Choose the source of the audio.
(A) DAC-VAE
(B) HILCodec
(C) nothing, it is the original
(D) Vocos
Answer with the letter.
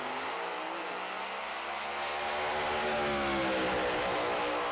C